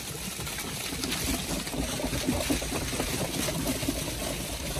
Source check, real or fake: real